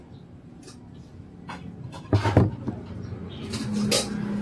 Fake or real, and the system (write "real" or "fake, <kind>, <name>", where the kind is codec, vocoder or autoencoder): real